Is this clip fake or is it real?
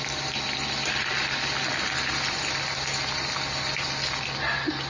fake